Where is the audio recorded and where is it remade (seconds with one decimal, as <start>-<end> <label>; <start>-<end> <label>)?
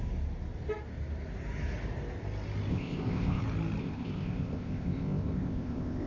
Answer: 0.0-2.7 recorded; 2.7-3.4 remade; 3.4-3.8 recorded; 3.8-6.1 remade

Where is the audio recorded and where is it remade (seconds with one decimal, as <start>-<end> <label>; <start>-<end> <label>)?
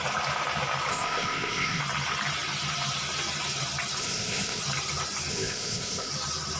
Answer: 0.0-0.9 recorded; 0.9-1.8 remade; 1.8-4.0 recorded; 4.0-4.6 remade; 4.6-5.3 recorded; 5.3-6.1 remade; 6.1-6.6 recorded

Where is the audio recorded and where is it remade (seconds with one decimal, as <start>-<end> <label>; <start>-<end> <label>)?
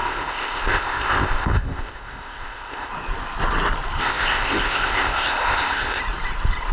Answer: 0.0-2.9 remade; 2.9-4.0 recorded; 4.0-6.0 remade; 6.0-6.7 recorded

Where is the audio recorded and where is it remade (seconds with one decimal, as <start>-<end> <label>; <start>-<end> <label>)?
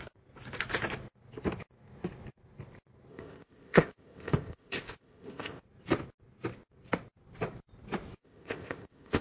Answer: 0.0-3.1 recorded; 3.1-5.6 remade; 5.6-8.2 recorded; 8.2-9.2 remade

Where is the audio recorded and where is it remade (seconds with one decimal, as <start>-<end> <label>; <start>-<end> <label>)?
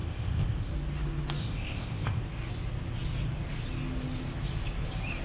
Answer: 0.0-0.7 remade; 0.7-1.4 recorded; 1.4-2.2 remade; 2.2-5.2 recorded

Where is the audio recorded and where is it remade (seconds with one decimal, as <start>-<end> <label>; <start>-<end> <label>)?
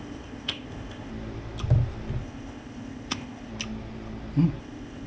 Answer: 0.0-1.1 remade; 1.1-2.2 recorded; 2.2-3.5 remade; 3.5-4.6 recorded; 4.6-5.1 remade